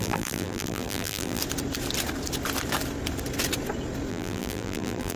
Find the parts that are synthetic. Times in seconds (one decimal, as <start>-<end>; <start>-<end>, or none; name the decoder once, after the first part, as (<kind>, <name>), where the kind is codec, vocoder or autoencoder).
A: 0.0-1.4 (vocoder, BigVGAN v2); 4.1-5.2